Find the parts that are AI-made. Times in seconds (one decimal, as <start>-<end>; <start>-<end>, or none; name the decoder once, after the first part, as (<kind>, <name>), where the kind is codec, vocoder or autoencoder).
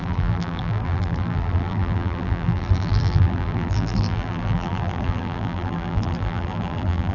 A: 0.0-7.1 (vocoder, BigVGAN v2)